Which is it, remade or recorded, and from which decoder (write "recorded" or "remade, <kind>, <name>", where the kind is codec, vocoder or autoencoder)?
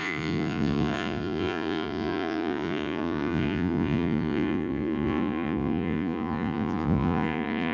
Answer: remade, vocoder, Vocos